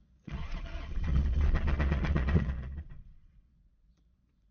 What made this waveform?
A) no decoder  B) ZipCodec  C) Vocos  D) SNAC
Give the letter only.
C